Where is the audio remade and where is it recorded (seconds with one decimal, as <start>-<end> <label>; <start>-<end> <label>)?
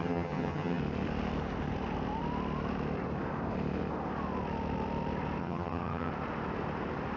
0.0-0.8 remade; 0.8-5.4 recorded; 5.4-6.1 remade; 6.1-7.2 recorded